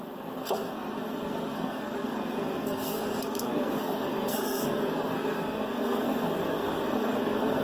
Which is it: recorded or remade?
remade